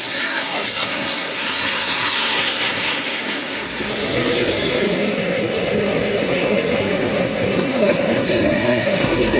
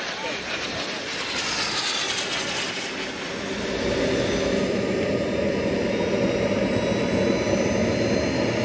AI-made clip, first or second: first